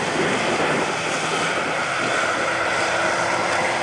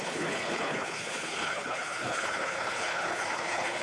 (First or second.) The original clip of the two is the first